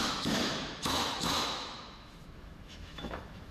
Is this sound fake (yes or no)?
yes